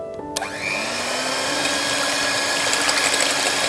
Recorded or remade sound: recorded